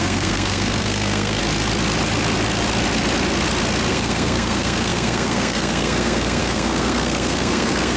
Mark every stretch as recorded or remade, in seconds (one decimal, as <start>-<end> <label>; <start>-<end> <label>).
0.0-1.4 remade; 1.4-3.9 recorded; 3.9-8.0 remade